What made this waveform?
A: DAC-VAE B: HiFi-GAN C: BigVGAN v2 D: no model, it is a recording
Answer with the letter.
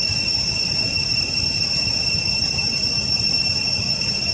C